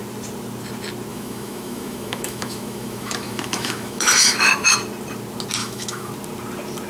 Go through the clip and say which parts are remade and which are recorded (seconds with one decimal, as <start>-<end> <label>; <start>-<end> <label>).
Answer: 0.0-1.1 recorded; 1.1-4.7 remade; 4.7-5.6 recorded; 5.6-6.1 remade; 6.1-6.9 recorded